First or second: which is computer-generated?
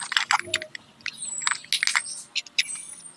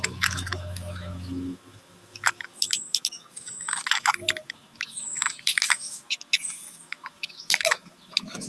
second